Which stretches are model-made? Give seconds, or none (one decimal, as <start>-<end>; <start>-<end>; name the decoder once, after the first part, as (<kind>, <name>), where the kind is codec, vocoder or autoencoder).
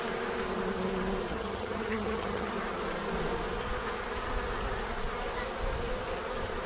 1.3-2.5 (vocoder, HiFi-GAN)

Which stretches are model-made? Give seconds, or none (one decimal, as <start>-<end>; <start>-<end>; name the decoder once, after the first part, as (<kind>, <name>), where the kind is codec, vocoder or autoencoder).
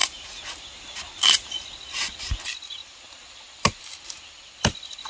none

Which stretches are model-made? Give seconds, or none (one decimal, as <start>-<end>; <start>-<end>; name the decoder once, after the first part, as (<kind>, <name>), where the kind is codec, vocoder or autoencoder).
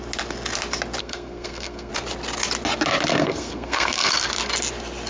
1.0-1.9 (codec, SNAC); 3.1-4.1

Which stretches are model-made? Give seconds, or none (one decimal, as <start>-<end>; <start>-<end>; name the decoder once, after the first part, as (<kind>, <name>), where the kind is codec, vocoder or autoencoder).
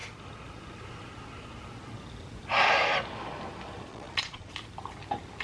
3.9-4.5 (vocoder, Vocos)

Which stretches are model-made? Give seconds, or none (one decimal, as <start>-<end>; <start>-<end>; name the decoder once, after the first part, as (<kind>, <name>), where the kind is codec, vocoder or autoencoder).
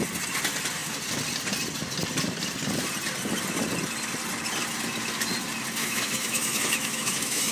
5.8-7.5 (autoencoder, DAC-VAE)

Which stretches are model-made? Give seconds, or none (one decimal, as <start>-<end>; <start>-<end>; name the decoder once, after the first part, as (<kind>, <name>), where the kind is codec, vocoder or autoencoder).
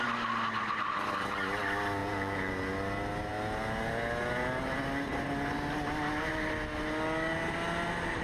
2.0-2.5 (vocoder, Vocos)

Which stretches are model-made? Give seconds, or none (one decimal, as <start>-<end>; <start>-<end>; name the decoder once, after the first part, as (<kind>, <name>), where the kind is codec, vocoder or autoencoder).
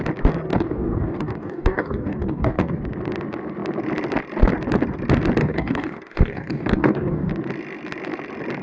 0.5-2.8 (codec, DAC); 5.4-7.3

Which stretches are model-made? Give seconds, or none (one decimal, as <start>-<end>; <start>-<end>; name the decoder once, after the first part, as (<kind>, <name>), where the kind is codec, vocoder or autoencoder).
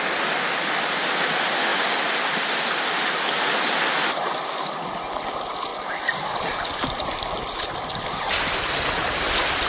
5.7-8.7 (vocoder, BigVGAN v2)